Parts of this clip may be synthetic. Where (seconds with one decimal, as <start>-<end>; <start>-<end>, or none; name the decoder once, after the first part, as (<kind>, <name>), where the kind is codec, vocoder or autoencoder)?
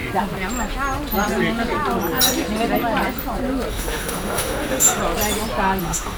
3.7-5.0 (autoencoder, DAC-VAE); 5.8-6.2